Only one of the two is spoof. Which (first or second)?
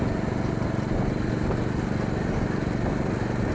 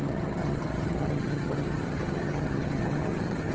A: second